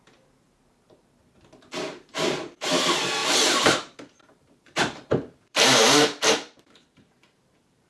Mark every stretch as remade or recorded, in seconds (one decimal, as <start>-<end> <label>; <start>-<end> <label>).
0.0-1.2 remade; 1.2-2.1 recorded; 2.1-7.9 remade